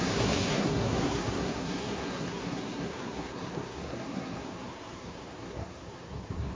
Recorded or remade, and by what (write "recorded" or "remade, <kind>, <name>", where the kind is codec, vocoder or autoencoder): remade, codec, SNAC